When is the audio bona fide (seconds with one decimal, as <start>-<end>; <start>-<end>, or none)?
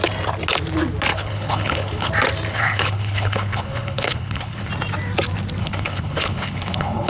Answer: 0.0-1.1; 2.1-2.5; 4.7-5.6